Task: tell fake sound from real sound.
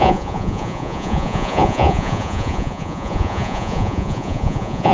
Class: fake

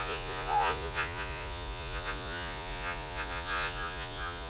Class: fake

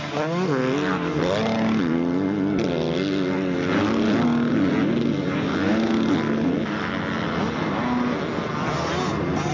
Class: real